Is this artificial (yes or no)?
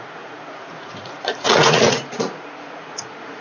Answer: yes